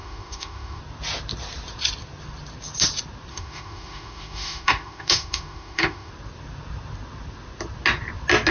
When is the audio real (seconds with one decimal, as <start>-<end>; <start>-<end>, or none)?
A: 0.8-3.3; 6.1-8.5